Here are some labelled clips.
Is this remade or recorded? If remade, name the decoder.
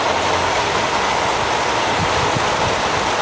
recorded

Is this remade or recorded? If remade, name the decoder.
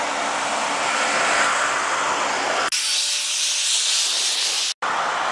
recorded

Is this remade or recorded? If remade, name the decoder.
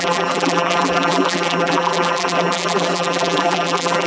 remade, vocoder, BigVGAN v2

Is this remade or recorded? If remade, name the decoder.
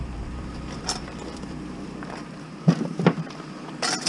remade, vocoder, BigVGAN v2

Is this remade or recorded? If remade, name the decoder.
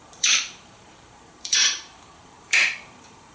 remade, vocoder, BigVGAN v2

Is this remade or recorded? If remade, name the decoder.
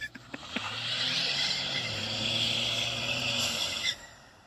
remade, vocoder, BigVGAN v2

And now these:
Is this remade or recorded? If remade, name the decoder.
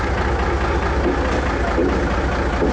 recorded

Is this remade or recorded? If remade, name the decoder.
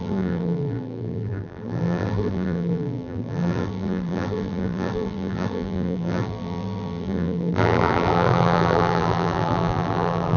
remade, vocoder, BigVGAN v2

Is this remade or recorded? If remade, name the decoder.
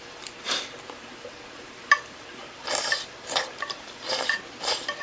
remade, vocoder, BigVGAN v2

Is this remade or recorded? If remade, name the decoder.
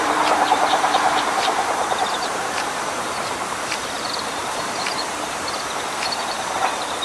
remade, vocoder, BigVGAN v2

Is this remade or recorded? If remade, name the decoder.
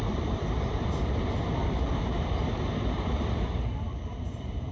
remade, vocoder, BigVGAN v2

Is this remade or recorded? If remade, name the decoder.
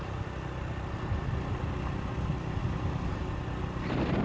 remade, vocoder, BigVGAN v2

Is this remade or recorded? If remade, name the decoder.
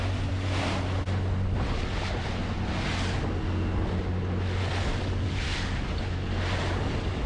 recorded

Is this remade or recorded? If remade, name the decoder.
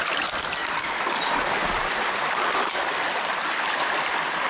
recorded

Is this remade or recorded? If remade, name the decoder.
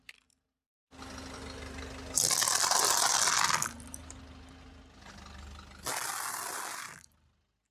recorded